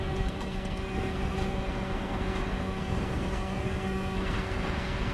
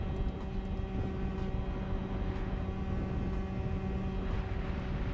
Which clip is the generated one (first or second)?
first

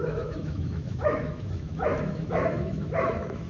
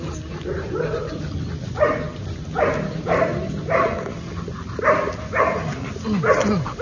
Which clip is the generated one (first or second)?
first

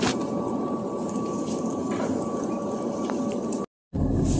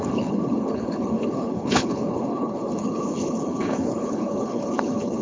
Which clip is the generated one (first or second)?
second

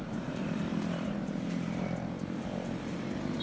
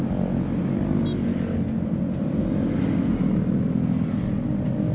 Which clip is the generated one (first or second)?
first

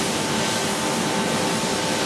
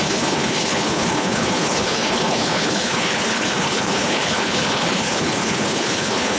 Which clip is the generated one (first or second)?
second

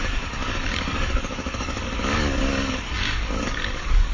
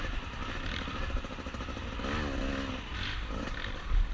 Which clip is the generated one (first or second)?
first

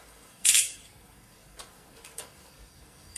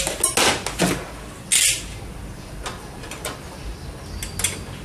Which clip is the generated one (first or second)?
first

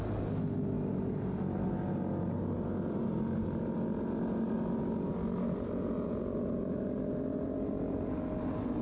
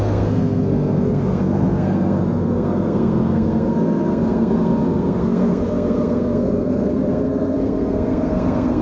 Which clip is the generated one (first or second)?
second